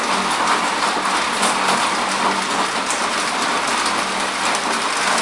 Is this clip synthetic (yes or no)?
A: no